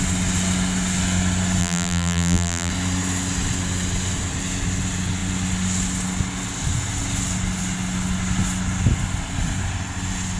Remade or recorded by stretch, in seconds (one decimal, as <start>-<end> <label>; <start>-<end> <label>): 0.0-1.6 recorded; 1.6-2.7 remade; 2.7-10.4 recorded